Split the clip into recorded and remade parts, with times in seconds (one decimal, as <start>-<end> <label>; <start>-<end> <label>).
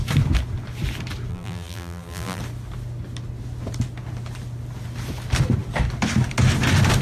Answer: 0.0-1.3 recorded; 1.3-2.4 remade; 2.4-7.0 recorded